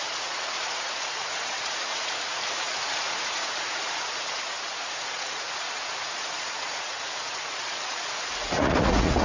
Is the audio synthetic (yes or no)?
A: yes